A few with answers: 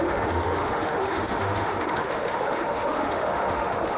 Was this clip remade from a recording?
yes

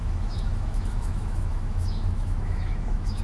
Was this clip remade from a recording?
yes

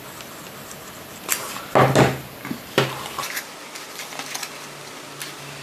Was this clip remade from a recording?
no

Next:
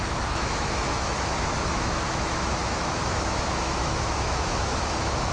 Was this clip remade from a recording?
yes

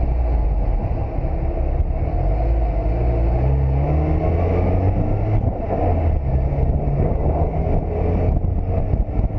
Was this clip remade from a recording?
no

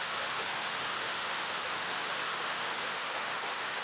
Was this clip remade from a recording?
yes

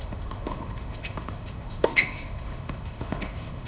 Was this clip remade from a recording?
yes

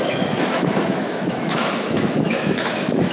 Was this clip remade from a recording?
yes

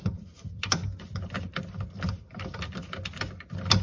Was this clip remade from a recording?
no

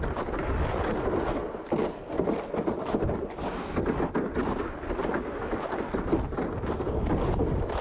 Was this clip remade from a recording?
no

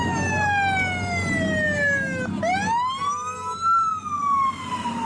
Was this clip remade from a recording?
no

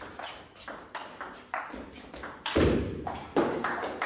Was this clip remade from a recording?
no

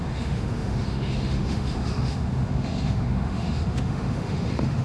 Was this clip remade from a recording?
yes